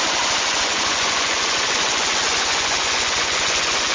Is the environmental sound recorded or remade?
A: remade